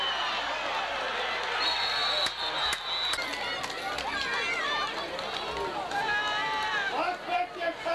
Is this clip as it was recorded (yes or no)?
yes